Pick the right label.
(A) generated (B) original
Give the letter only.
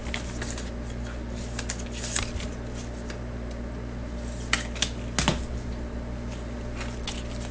B